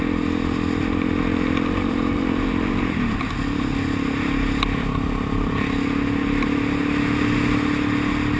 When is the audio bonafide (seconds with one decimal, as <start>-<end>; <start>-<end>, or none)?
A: 0.0-0.8; 3.3-8.4